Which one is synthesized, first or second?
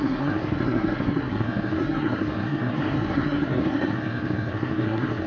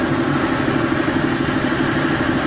first